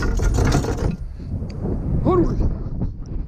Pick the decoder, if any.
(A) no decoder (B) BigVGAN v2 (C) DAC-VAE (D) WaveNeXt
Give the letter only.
A